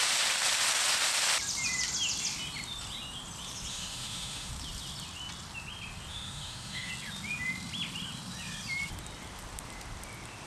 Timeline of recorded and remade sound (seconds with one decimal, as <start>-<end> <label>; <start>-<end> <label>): 0.0-3.7 recorded; 3.7-4.5 remade; 4.5-6.1 recorded; 6.1-6.9 remade; 6.9-10.5 recorded